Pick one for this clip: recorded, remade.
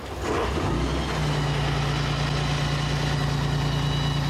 recorded